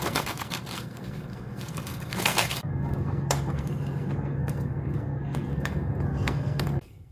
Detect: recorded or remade remade